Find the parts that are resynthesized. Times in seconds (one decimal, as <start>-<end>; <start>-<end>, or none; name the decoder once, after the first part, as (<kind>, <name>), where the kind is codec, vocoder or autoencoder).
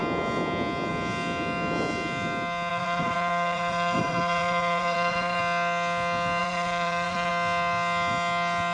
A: 2.7-5.4 (vocoder, Vocos); 6.4-7.3